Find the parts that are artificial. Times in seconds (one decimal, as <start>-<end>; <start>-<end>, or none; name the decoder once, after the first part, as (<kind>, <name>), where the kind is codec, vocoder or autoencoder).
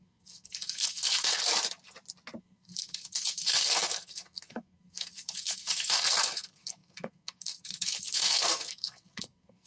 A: 0.0-1.4 (codec, SNAC); 2.4-9.7